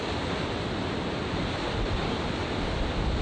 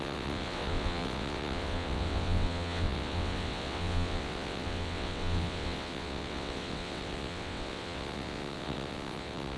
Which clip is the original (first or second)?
first